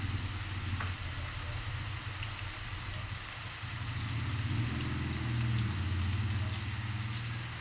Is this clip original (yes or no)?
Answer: yes